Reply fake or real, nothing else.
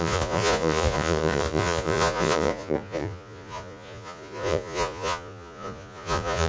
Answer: fake